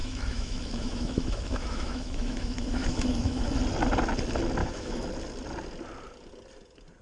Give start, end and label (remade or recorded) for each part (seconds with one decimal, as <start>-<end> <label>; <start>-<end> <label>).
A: 0.0-3.5 remade; 3.5-4.6 recorded; 4.6-5.1 remade; 5.1-7.0 recorded